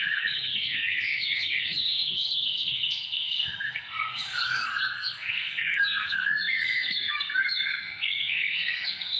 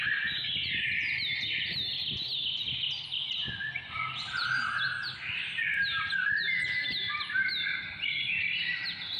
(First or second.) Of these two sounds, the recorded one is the second